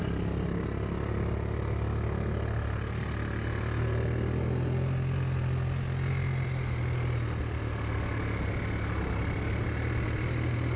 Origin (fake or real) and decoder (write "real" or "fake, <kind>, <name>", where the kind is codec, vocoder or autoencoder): real